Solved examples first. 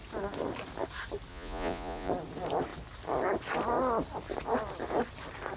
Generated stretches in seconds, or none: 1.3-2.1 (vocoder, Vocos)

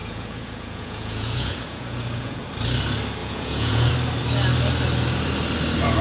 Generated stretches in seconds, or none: 0.0-2.4 (vocoder, Vocos); 3.2-3.9

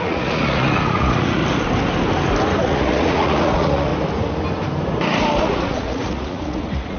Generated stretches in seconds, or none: 0.0-1.4 (vocoder, Vocos); 2.6-3.9; 5.4-7.0

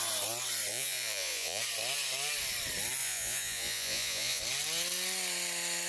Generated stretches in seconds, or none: 0.7-1.6 (vocoder, Vocos); 3.0-4.4